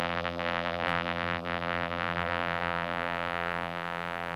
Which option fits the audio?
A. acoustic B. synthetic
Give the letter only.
B